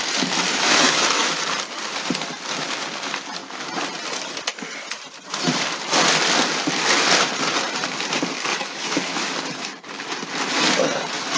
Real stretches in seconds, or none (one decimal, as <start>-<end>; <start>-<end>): 0.0-0.5; 1.4-8.5; 9.3-11.4